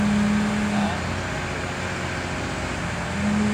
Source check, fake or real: real